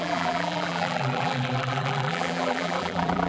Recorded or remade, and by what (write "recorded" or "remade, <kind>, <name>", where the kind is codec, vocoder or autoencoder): remade, vocoder, BigVGAN v2